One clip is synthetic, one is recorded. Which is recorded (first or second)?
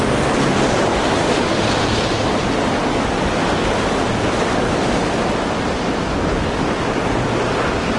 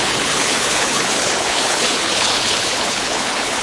first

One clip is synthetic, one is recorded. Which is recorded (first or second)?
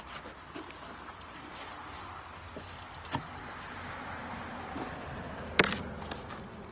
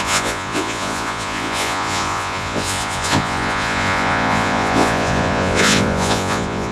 first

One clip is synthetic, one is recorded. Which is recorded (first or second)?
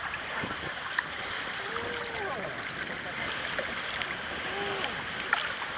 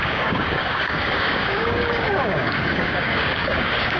first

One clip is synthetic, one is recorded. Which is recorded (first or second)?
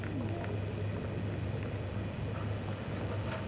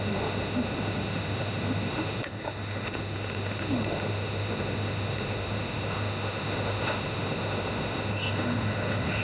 first